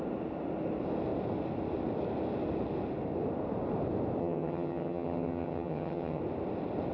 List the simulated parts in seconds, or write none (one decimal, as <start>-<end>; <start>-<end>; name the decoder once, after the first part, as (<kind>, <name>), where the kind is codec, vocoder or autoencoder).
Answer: 4.2-6.2 (vocoder, HiFi-GAN)